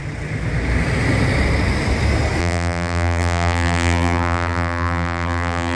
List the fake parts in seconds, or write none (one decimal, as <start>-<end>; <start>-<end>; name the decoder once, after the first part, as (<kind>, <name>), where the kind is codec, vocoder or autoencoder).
2.4-5.8 (vocoder, BigVGAN v2)